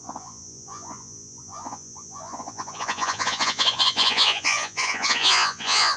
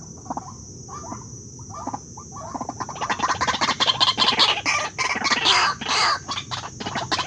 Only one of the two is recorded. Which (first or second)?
second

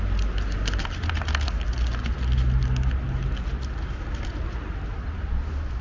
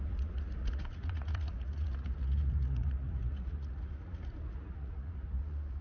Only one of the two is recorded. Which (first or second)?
first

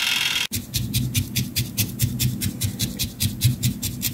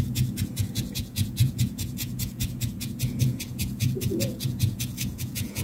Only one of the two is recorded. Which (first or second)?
first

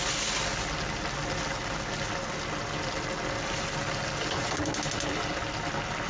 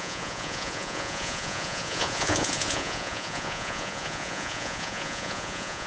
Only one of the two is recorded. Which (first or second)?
first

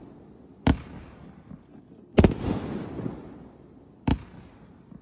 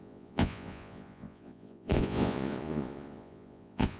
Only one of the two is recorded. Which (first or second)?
first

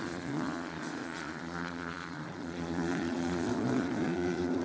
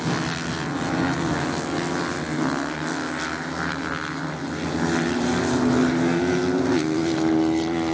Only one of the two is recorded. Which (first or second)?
second